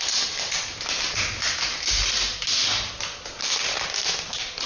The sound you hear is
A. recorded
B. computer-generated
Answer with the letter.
A